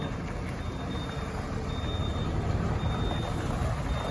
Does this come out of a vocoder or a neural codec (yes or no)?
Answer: no